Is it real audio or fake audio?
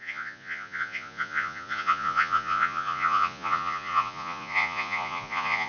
fake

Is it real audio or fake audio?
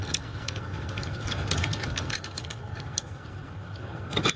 fake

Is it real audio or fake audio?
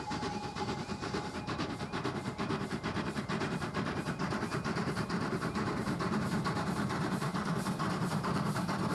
fake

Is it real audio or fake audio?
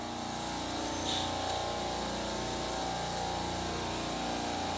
real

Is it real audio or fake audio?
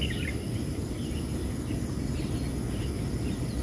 real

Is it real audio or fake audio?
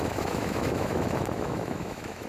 fake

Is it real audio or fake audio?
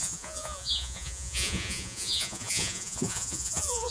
fake